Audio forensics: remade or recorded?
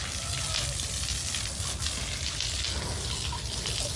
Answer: recorded